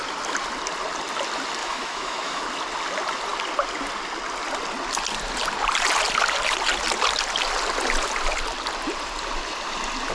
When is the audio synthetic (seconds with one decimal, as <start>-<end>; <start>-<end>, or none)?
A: 1.6-2.4